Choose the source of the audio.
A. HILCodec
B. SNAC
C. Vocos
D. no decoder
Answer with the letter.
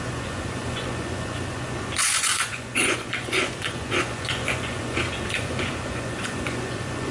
C